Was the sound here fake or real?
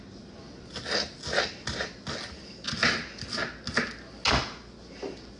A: real